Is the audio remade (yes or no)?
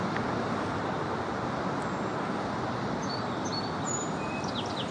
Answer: no